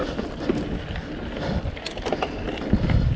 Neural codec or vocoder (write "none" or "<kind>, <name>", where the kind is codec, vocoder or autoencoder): none